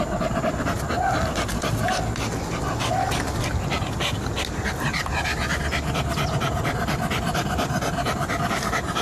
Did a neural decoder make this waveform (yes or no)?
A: no